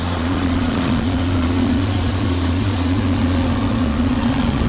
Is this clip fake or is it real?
fake